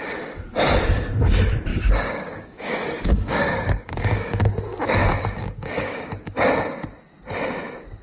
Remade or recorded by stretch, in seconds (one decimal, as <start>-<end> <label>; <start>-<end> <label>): 0.0-1.7 recorded; 1.7-6.5 remade; 6.5-8.0 recorded